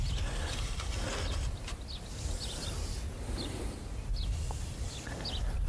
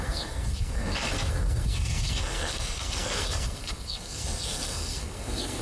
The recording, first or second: first